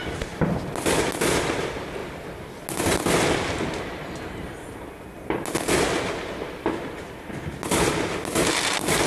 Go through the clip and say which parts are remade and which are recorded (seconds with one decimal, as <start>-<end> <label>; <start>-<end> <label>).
0.0-9.1 recorded